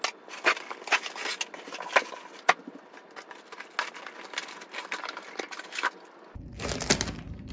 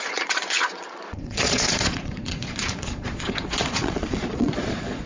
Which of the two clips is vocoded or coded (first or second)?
second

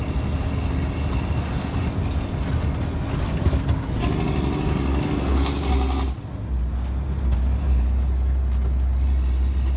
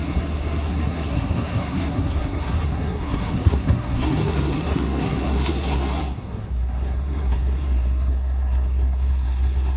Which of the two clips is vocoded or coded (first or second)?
second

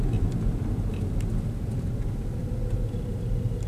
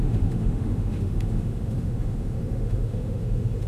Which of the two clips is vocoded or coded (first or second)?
second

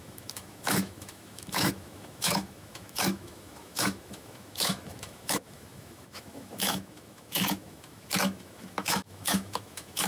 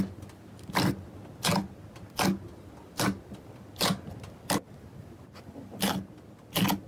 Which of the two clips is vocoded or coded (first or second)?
first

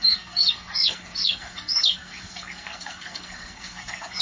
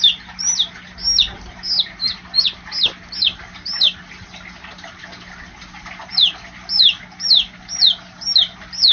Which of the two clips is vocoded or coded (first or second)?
first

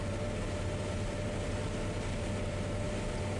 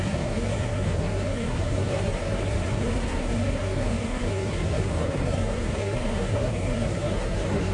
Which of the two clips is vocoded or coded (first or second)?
second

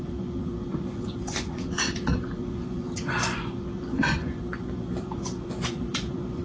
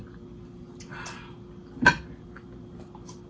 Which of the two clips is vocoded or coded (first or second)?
first